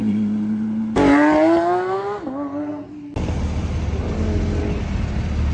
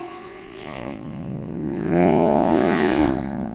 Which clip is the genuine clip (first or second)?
first